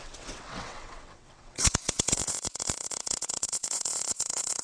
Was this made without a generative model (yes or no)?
no